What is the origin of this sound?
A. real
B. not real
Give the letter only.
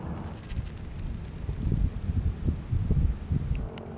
A